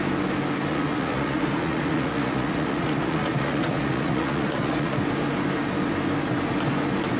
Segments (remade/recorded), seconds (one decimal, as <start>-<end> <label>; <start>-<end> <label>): 0.0-0.7 recorded; 0.7-5.0 remade; 5.0-7.2 recorded